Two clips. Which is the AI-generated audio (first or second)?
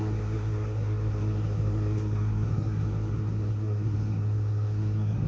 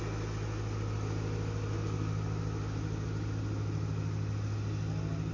first